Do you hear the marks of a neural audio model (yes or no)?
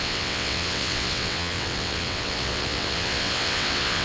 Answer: yes